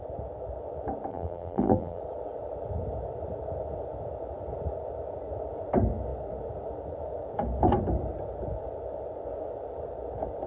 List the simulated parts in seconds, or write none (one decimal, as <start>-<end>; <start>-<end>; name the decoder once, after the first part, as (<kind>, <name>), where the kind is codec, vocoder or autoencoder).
1.1-2.0 (vocoder, BigVGAN v2)